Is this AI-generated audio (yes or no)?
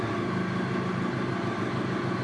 no